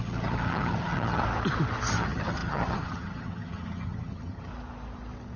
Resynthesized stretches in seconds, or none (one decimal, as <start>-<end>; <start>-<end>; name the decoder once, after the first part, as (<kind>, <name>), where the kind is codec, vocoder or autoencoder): 0.0-1.2 (vocoder, HiFi-GAN); 1.9-4.5